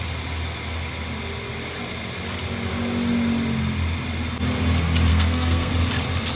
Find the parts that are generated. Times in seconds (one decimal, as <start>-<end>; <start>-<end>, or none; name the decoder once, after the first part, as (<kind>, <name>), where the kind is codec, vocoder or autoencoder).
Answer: 5.1-5.7 (codec, SNAC)